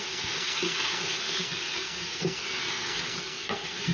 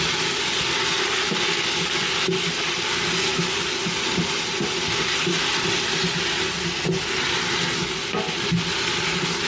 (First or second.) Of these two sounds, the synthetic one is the first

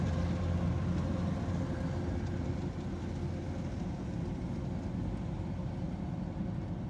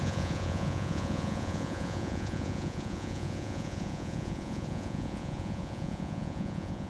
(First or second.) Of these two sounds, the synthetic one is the second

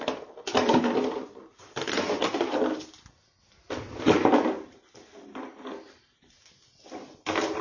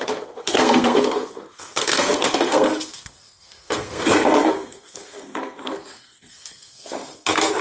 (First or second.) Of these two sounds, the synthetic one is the second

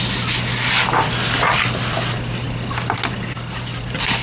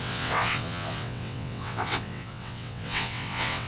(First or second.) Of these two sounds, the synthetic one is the second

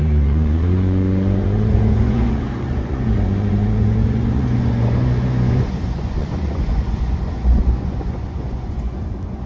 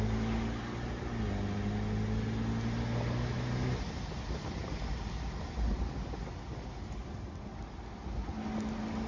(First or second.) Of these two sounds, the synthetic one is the first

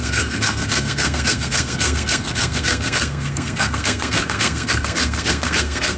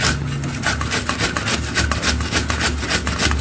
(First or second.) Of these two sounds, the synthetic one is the first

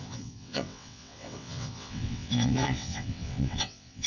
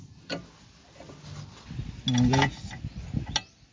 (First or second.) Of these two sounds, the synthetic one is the first